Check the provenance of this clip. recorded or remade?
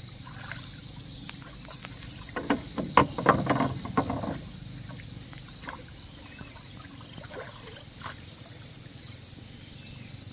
recorded